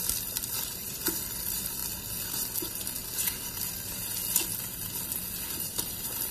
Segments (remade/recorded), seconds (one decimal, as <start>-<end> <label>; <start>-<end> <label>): 0.0-1.8 remade; 1.8-5.6 recorded; 5.6-6.3 remade